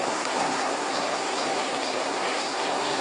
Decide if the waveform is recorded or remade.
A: remade